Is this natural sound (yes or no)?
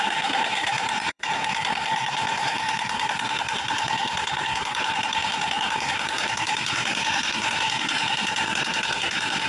no